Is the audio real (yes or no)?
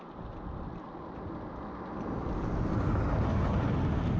yes